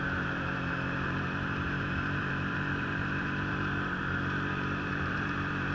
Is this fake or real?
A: fake